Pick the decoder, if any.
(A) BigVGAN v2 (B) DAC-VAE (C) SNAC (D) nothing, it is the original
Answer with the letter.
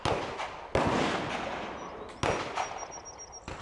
D